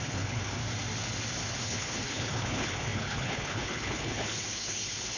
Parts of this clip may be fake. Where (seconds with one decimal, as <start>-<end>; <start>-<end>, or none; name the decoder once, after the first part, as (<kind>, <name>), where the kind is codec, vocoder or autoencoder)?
0.0-0.6 (codec, HILCodec); 1.6-5.2